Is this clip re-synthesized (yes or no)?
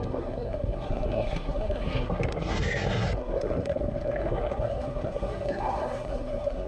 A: yes